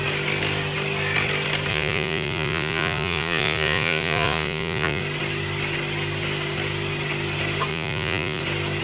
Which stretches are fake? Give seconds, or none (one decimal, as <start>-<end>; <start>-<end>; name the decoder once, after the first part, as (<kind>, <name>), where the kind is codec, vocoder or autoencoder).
1.7-5.0 (vocoder, Vocos); 7.7-8.4